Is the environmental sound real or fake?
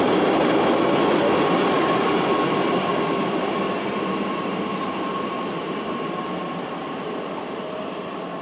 real